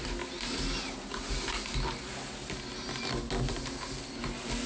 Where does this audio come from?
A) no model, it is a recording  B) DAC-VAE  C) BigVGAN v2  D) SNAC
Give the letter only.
A